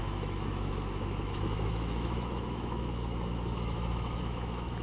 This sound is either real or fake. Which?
fake